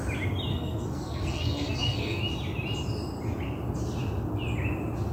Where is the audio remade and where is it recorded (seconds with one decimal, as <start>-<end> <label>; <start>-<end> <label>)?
0.0-0.5 recorded; 0.5-2.2 remade; 2.2-5.1 recorded